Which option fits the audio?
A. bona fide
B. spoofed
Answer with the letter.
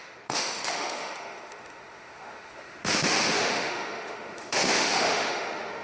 B